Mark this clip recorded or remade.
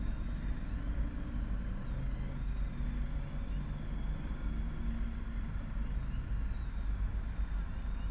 recorded